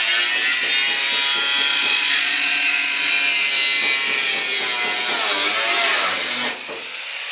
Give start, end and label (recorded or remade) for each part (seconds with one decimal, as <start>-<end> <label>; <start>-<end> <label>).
0.0-1.7 recorded; 1.7-3.1 remade; 3.1-7.3 recorded